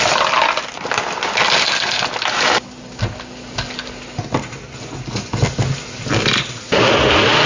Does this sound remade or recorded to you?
recorded